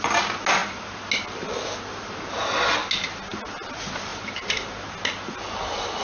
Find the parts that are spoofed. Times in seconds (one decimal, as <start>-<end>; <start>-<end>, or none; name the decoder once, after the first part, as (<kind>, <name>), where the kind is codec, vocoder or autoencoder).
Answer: none